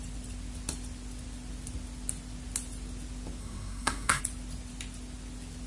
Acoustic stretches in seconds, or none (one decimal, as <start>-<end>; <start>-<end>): 0.0-3.4; 4.2-5.7